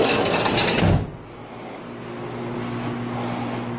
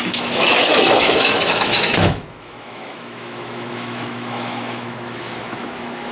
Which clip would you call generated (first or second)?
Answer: second